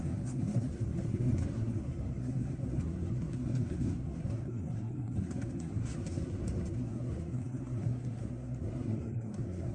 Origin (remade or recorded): remade